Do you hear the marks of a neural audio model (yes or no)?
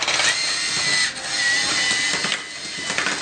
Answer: no